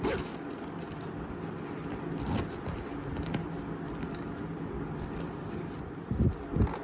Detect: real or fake real